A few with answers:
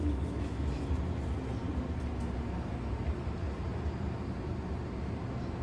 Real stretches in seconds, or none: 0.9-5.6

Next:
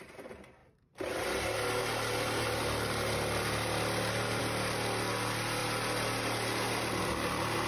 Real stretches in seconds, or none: 0.0-7.7

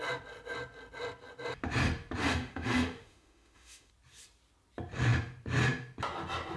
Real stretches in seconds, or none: 0.0-2.2; 3.9-6.6